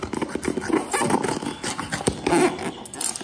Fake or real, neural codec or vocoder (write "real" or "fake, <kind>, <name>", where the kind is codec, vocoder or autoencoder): real